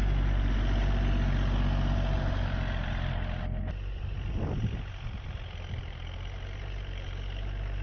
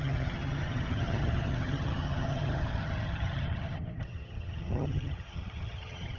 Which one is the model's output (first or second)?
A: second